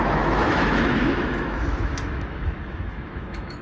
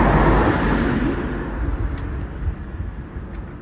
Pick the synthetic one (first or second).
first